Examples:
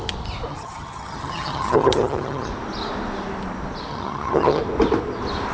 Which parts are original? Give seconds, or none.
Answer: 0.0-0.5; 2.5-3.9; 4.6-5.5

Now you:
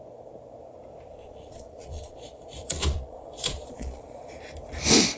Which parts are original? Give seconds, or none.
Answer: 0.0-1.2; 4.3-5.2

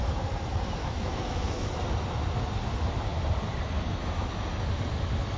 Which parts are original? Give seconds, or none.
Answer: 0.0-0.8; 1.7-5.4

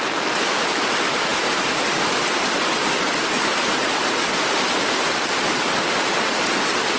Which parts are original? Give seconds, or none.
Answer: 0.0-7.0

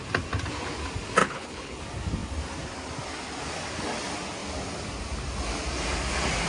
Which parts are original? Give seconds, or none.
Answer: 0.0-1.2; 1.8-6.5

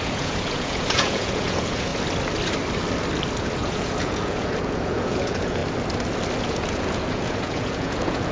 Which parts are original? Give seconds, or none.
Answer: 1.9-3.4; 5.6-6.4

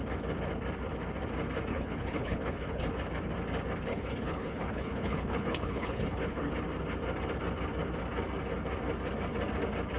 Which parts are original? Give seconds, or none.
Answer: 0.0-1.7; 2.9-3.9; 6.5-10.0